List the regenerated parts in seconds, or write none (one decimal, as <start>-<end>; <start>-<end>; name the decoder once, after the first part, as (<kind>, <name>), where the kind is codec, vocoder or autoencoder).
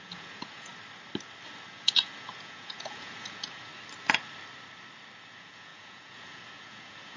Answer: 0.0-0.7 (vocoder, Vocos); 1.7-3.7; 5.2-7.2